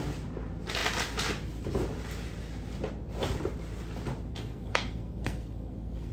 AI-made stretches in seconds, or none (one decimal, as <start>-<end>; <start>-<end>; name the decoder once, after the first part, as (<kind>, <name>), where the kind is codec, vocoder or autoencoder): 4.3-6.1 (codec, SNAC)